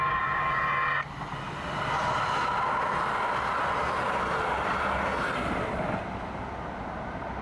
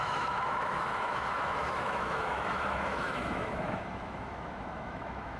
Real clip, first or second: first